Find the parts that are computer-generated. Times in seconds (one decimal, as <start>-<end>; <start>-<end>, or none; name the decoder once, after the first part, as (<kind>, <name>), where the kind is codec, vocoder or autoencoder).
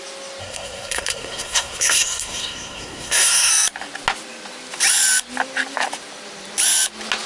0.4-3.5 (codec, SNAC)